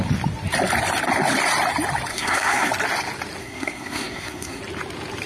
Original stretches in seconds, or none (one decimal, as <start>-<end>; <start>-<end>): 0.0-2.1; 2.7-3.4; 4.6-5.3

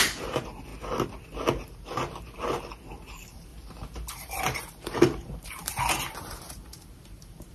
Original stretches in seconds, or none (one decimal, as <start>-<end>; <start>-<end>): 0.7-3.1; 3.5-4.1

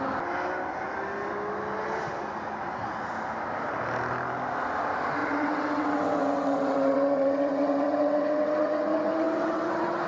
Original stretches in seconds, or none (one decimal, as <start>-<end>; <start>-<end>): 0.0-5.2

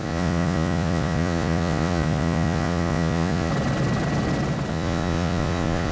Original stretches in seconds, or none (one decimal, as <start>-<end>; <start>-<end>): 3.5-4.7

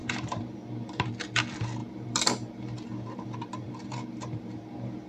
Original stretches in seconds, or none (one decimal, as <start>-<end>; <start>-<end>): 1.1-1.8